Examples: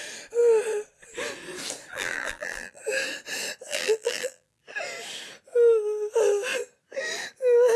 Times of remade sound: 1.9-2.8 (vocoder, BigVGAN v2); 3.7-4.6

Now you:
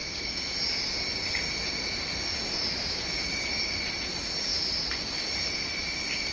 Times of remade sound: none

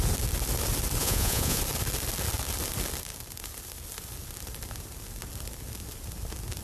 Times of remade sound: 1.0-1.6 (vocoder, Vocos)

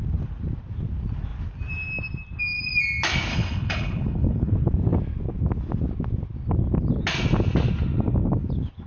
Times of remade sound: 3.3-4.5 (codec, HILCodec)

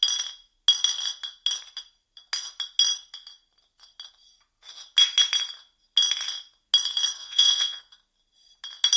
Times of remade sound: 7.2-7.8 (vocoder, Vocos)

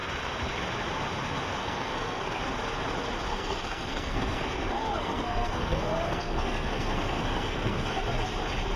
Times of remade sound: 1.6-2.4 (codec, SNAC); 3.3-8.0